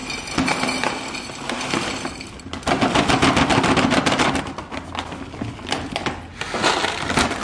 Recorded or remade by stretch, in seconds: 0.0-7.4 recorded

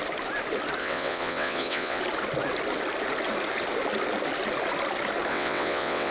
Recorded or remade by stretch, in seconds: 0.0-0.8 recorded; 0.8-2.0 remade; 2.0-5.3 recorded; 5.3-6.1 remade